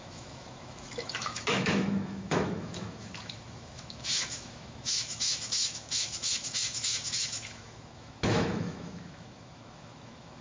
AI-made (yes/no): yes